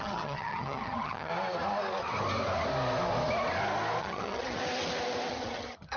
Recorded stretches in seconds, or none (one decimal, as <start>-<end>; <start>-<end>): 1.3-4.0; 4.6-5.3